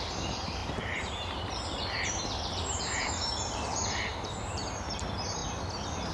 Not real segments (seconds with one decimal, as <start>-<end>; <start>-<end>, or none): 0.0-5.4